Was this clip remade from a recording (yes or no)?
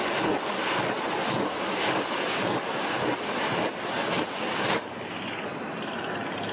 no